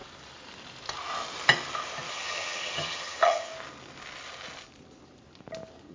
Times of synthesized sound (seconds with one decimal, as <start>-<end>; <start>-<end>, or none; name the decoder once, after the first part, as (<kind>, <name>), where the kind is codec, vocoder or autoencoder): 2.1-3.5 (vocoder, HiFi-GAN)